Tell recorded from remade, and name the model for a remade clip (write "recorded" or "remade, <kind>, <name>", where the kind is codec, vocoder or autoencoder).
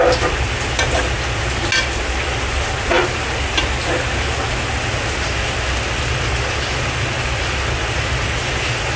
recorded